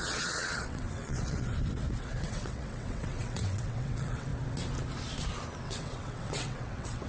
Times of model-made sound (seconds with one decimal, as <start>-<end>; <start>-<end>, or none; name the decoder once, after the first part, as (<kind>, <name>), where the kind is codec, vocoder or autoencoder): 0.0-1.5 (vocoder, WaveNeXt); 2.0-4.3; 5.6-7.1